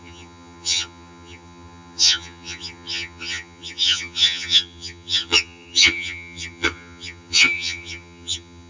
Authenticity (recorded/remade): remade